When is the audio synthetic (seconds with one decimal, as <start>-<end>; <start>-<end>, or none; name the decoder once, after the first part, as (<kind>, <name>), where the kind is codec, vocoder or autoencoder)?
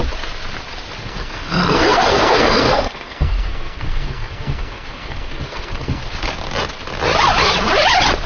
1.0-6.0 (codec, SNAC)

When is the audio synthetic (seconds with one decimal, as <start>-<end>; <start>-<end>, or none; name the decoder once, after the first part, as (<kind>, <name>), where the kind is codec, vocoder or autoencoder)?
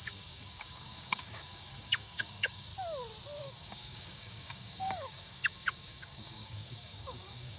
0.0-2.7 (codec, DAC); 3.4-7.6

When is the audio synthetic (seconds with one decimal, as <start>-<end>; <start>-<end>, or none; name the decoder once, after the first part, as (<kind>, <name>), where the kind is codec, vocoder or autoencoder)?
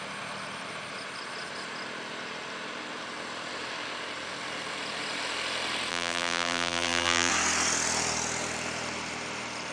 5.9-7.3 (vocoder, BigVGAN v2)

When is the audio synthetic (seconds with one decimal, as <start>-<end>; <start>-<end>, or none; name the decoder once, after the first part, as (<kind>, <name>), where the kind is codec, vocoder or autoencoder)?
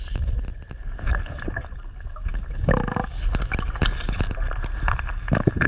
none